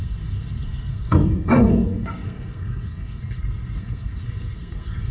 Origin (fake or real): fake